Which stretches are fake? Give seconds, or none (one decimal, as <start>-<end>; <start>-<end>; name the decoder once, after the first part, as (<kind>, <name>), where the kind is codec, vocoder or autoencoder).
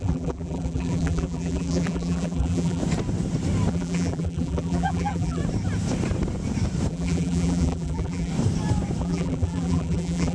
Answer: 0.0-2.8 (vocoder, BigVGAN v2); 3.7-5.4; 6.9-8.3; 9.0-10.3